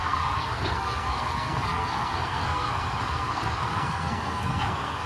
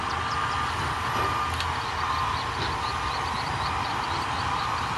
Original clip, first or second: second